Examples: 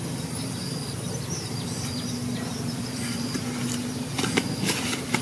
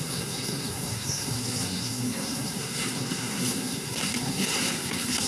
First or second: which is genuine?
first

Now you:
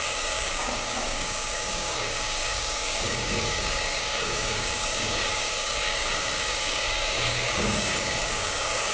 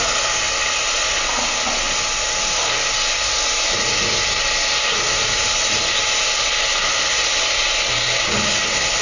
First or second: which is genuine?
second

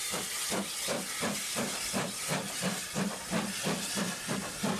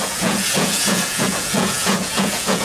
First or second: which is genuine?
first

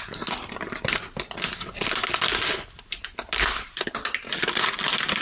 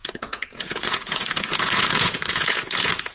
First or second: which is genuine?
first